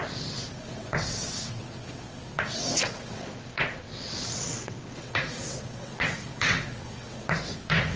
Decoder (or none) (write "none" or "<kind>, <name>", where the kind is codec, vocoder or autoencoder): vocoder, WaveNeXt